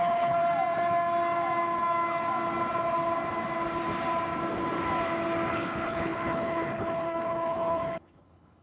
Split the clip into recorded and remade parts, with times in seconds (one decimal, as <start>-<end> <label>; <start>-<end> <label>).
0.0-0.4 remade; 0.4-5.5 recorded; 5.5-8.6 remade